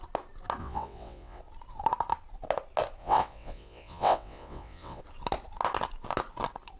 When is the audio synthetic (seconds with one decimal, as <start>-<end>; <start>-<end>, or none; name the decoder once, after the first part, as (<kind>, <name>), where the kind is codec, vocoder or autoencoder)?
0.6-1.4 (vocoder, WaveNeXt); 3.0-5.0